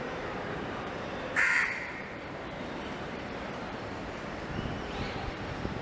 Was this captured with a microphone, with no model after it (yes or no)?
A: no